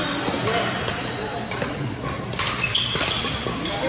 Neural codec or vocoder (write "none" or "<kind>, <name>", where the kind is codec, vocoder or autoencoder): none